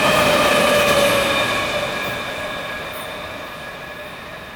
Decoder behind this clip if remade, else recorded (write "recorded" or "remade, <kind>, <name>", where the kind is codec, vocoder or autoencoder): recorded